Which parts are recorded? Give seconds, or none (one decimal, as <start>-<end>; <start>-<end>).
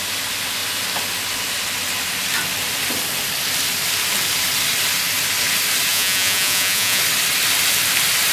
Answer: 0.0-5.9; 7.0-8.3